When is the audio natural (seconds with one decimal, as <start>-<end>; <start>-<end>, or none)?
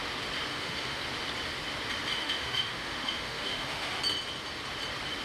0.0-0.5; 1.0-2.2; 4.0-5.2